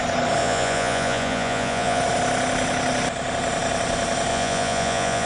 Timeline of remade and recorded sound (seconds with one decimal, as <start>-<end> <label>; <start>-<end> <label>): 0.0-0.4 recorded; 0.4-2.0 remade; 2.0-4.3 recorded; 4.3-5.3 remade